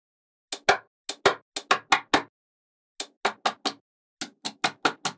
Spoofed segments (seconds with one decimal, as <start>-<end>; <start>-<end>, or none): none